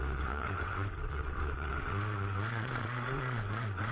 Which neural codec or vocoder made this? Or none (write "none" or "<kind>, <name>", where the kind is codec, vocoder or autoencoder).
vocoder, WaveNeXt